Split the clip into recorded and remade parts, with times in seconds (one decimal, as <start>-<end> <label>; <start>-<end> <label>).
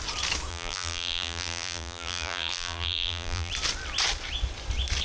0.0-0.5 recorded; 0.5-3.5 remade; 3.5-5.0 recorded